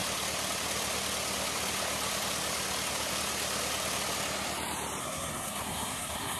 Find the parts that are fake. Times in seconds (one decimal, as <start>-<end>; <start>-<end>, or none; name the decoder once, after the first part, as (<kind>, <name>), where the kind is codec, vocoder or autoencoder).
5.0-6.4 (codec, SNAC)